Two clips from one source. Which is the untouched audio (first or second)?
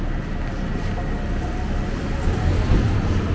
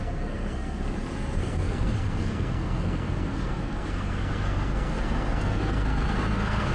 first